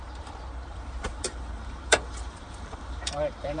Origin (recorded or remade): remade